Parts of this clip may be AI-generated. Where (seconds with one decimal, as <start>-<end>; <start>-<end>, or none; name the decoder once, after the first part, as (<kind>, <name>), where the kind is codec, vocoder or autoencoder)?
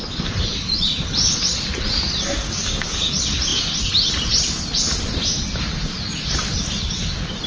2.4-3.1 (codec, DAC)